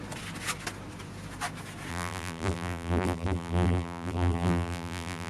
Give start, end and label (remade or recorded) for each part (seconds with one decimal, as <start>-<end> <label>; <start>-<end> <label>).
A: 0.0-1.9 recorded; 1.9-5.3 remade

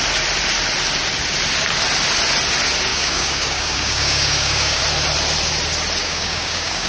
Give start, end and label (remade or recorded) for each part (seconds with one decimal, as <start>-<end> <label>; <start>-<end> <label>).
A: 0.0-2.9 recorded; 2.9-4.8 remade; 4.8-6.0 recorded; 6.0-6.9 remade

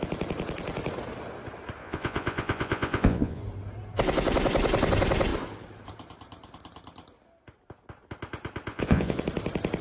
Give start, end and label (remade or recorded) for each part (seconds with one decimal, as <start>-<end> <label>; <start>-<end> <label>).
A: 0.0-1.8 recorded; 1.8-3.4 remade; 3.4-8.7 recorded; 8.7-9.2 remade; 9.2-9.8 recorded

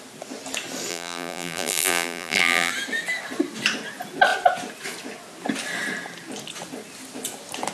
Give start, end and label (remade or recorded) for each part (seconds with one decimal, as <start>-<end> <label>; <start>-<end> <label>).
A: 0.0-0.9 recorded; 0.9-2.7 remade; 2.7-7.7 recorded

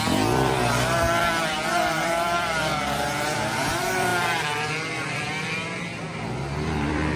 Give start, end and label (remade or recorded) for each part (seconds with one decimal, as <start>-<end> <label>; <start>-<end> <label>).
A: 0.0-7.2 remade

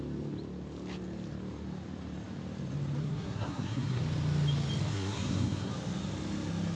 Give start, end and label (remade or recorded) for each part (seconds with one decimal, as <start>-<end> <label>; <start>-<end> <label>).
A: 0.0-3.0 recorded; 3.0-4.0 remade; 4.0-4.9 recorded; 4.9-5.7 remade; 5.7-6.7 recorded

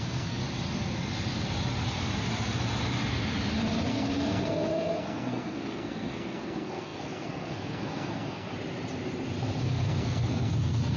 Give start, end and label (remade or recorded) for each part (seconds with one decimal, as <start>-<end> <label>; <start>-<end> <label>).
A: 0.0-0.4 remade; 0.4-3.9 recorded; 3.9-8.5 remade; 8.5-9.6 recorded; 9.6-11.0 remade

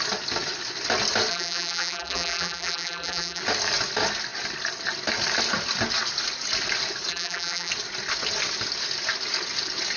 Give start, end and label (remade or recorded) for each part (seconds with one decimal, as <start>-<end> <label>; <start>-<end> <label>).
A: 0.0-1.3 recorded; 1.3-3.4 remade; 3.4-7.1 recorded; 7.1-7.7 remade; 7.7-10.0 recorded